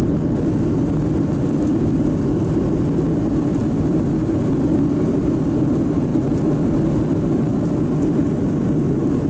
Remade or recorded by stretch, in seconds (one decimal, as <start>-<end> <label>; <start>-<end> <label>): 0.0-9.3 recorded